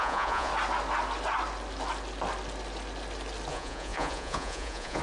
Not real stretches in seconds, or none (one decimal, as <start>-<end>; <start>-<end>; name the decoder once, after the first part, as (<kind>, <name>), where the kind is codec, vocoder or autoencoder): 0.0-0.5 (vocoder, Vocos); 3.5-5.0